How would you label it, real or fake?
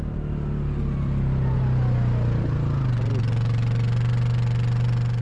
real